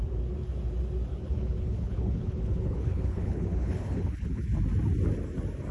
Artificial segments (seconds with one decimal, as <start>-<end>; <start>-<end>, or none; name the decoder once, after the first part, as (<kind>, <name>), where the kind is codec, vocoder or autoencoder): 1.1-4.5 (codec, HILCodec)

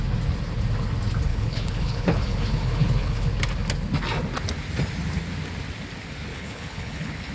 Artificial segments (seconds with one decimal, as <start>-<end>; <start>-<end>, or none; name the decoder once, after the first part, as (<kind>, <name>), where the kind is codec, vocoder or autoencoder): 1.3-3.3 (codec, HILCodec); 6.3-7.3

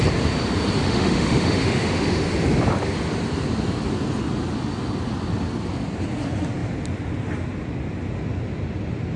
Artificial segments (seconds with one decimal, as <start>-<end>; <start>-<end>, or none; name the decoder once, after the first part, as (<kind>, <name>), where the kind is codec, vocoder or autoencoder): 0.8-2.3 (autoencoder, DAC-VAE)

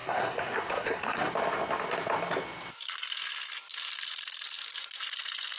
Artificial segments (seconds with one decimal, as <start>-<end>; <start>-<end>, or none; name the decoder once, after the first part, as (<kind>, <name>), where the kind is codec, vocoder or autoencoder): 0.0-1.3 (codec, SNAC)